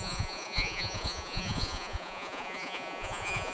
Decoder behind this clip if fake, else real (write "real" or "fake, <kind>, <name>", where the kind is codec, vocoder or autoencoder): fake, vocoder, Vocos